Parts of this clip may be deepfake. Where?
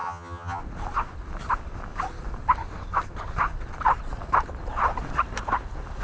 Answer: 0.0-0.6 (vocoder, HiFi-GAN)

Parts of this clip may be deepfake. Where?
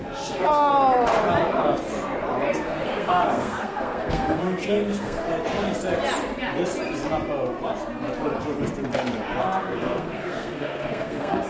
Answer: 0.0-0.7 (codec, SNAC); 2.5-5.2; 9.4-11.5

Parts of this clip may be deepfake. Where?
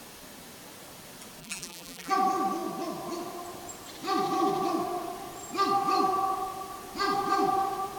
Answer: 1.4-2.1 (vocoder, BigVGAN v2)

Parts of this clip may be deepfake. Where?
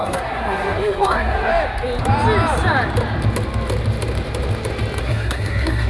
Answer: 0.0-1.5 (codec, SNAC); 5.0-5.9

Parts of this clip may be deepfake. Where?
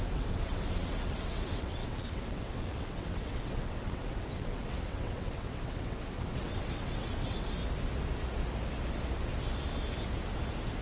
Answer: 0.0-7.6 (vocoder, WaveNeXt)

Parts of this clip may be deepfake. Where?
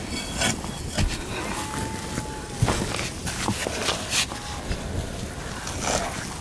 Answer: 1.6-5.2 (vocoder, BigVGAN v2)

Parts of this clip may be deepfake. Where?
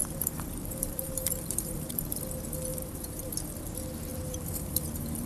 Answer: 0.0-2.2 (vocoder, BigVGAN v2); 2.7-3.3; 4.1-5.3